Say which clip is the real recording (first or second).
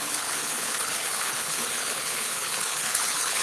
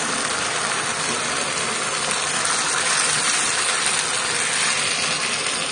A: second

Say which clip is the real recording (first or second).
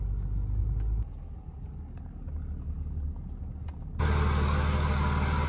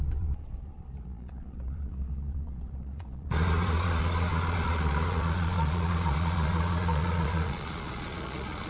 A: first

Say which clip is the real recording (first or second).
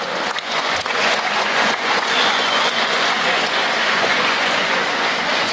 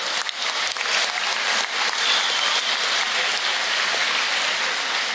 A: second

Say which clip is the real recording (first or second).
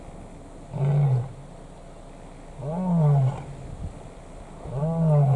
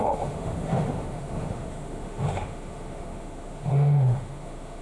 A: first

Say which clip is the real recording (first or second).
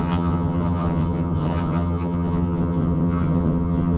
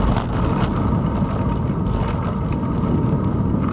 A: second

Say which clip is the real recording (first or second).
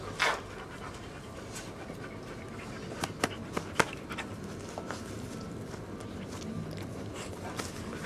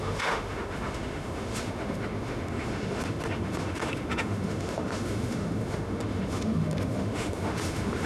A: first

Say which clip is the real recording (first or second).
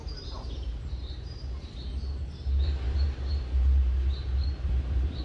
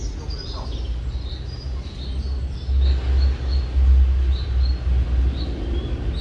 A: second